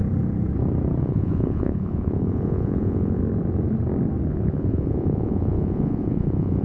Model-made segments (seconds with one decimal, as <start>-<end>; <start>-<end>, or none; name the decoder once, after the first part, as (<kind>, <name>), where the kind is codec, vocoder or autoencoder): 1.0-3.2 (vocoder, Vocos); 4.3-6.6